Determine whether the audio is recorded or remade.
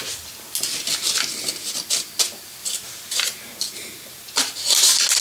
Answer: recorded